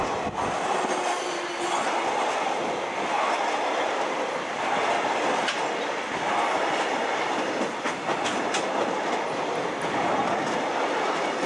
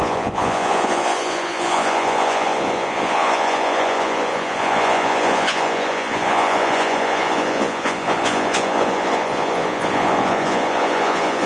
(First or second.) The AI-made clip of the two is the second